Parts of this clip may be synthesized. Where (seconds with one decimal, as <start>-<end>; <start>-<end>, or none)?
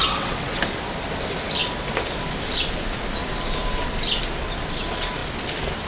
0.0-0.6